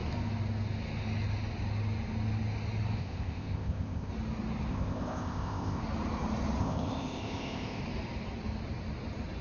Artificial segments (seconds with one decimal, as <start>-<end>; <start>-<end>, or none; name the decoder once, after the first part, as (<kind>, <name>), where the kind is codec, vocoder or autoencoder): 3.0-4.1 (codec, ZipCodec); 4.7-5.8; 6.6-7.8